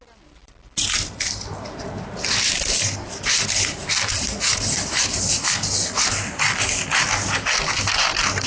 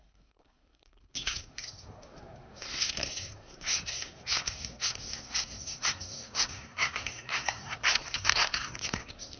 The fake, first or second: second